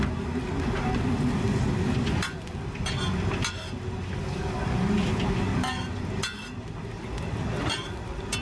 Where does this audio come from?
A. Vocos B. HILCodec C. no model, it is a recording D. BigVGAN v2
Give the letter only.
C